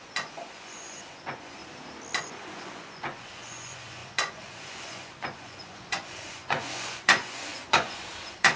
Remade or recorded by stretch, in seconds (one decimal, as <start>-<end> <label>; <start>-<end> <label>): 0.0-1.6 remade; 1.6-2.2 recorded; 2.2-8.6 remade